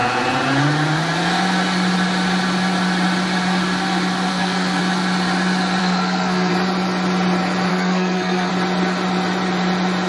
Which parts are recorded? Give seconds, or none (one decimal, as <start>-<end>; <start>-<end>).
0.0-4.3; 4.8-5.8; 6.5-7.7; 8.5-10.1